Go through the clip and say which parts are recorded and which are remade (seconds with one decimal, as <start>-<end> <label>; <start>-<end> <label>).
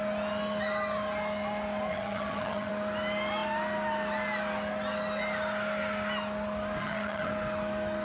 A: 0.0-1.9 recorded; 1.9-2.7 remade; 2.7-6.8 recorded; 6.8-7.3 remade; 7.3-8.0 recorded